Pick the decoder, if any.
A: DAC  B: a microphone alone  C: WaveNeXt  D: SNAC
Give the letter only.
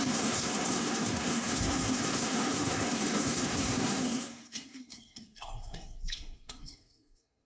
D